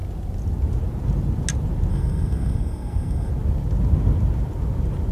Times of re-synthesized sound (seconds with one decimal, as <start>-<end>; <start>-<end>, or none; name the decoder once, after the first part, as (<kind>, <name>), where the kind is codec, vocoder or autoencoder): 1.9-3.3 (codec, SNAC)